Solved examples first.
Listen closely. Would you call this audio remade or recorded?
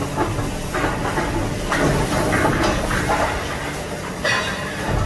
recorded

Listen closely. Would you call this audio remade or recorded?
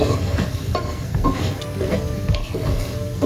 remade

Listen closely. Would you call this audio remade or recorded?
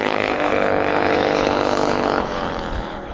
remade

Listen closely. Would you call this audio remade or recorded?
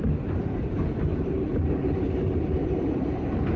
recorded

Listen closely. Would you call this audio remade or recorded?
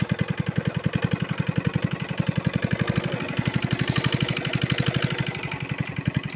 recorded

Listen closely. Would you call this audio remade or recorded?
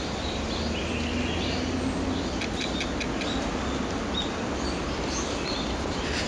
recorded